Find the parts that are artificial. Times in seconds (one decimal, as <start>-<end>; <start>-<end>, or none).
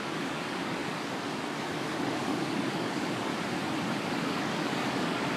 0.0-3.3; 4.0-5.4